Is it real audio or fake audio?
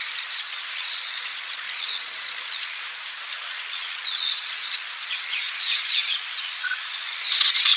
fake